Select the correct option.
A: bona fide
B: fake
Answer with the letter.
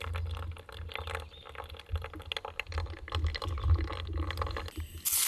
A